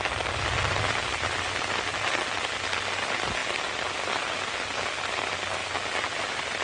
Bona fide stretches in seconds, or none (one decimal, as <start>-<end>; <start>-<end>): 0.0-6.6

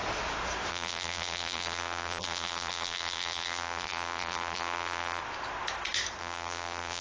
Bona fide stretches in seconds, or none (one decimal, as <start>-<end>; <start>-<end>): 0.0-0.7; 5.2-6.2

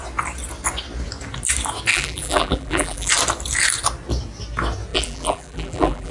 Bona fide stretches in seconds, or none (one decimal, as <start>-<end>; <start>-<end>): 0.0-1.9; 3.1-4.9

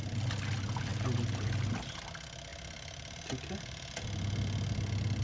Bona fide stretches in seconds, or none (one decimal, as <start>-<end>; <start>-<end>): 0.0-2.5; 3.9-5.2

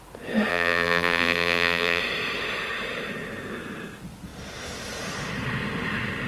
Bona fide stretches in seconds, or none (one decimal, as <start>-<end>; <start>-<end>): 0.0-0.5; 2.0-6.3